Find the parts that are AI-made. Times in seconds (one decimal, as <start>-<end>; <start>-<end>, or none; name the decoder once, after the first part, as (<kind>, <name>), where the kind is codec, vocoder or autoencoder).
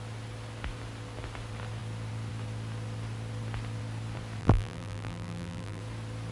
4.4-5.8 (vocoder, BigVGAN v2)